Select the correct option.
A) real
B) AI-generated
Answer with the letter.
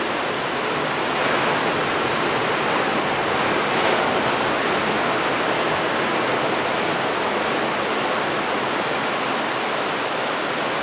A